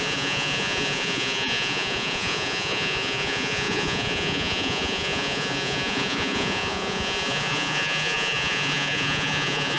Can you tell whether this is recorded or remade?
remade